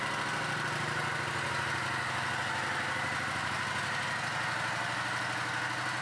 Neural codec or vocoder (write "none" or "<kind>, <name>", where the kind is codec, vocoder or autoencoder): none